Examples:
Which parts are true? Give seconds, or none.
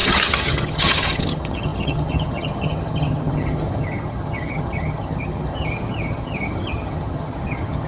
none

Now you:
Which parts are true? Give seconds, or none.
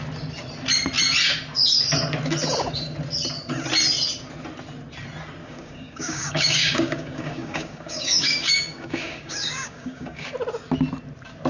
0.0-5.4; 10.3-11.5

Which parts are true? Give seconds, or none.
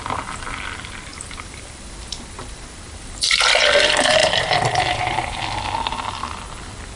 0.0-1.1; 3.4-4.2; 5.4-7.0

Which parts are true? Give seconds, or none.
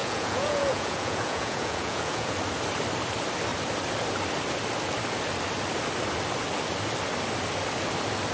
2.3-8.3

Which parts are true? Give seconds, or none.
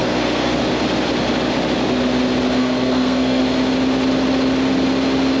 0.6-2.6; 3.4-5.4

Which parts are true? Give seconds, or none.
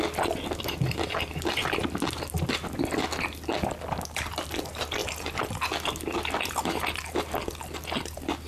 0.0-8.5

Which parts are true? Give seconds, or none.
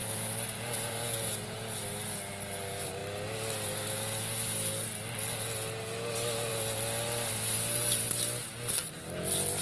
1.8-9.6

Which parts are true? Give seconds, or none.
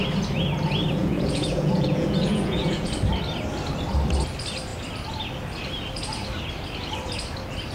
0.0-1.0; 2.9-7.7